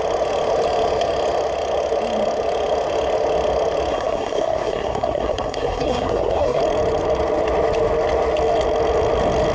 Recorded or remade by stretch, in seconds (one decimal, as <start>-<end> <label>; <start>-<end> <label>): 0.0-3.9 recorded; 3.9-6.6 remade; 6.6-9.5 recorded